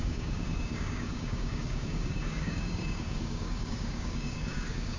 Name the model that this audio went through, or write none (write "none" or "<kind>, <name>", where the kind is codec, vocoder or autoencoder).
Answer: codec, DAC